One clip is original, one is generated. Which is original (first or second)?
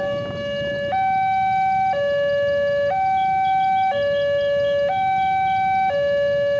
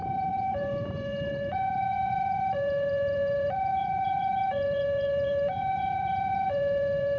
first